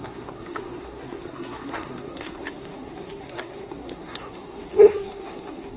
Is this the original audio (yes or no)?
no